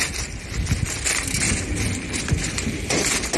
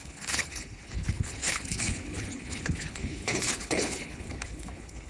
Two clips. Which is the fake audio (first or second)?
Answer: second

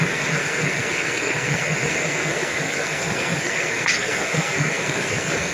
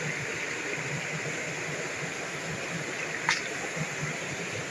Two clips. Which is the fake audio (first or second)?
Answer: first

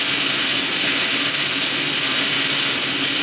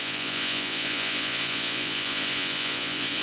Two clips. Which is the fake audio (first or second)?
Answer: second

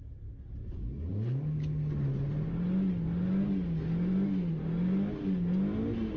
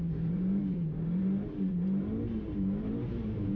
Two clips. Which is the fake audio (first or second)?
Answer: second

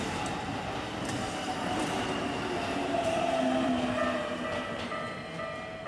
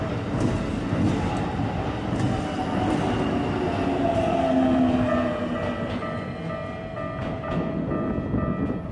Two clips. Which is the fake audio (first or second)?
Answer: first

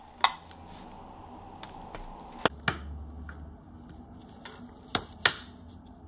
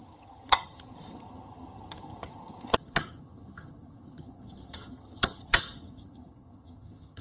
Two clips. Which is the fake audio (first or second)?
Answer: second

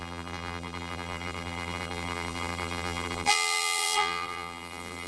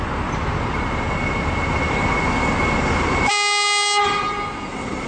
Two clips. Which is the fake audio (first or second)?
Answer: first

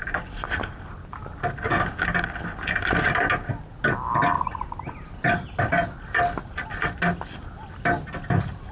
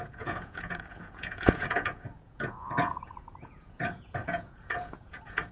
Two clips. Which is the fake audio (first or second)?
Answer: second